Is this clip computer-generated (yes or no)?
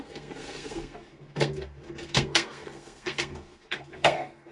yes